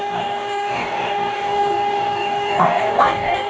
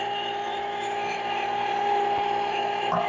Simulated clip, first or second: first